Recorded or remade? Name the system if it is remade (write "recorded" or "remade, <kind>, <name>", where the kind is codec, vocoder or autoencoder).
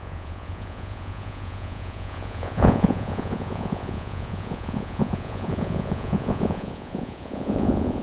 remade, vocoder, Vocos